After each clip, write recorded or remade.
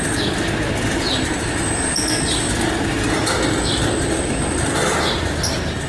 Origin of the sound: recorded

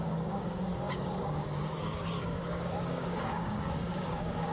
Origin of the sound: remade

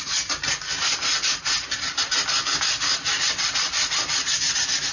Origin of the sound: recorded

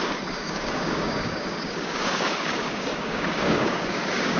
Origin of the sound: remade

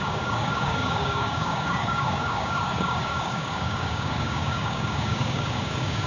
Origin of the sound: remade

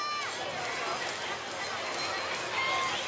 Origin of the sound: recorded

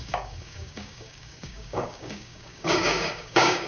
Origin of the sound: remade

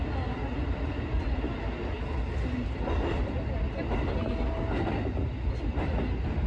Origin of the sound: recorded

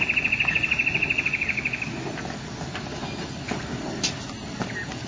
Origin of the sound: recorded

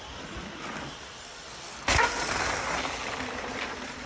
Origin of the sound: recorded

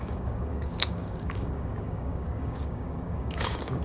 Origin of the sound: remade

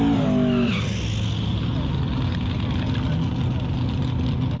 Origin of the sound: recorded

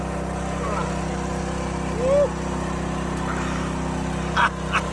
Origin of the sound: recorded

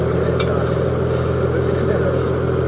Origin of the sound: recorded